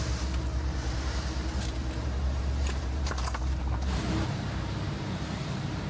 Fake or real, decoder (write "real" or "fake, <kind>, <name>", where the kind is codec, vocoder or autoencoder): fake, vocoder, BigVGAN v2